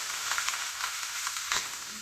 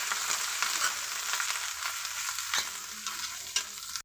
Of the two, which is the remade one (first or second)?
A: first